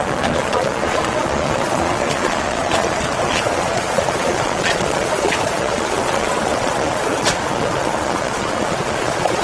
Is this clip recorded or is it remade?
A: remade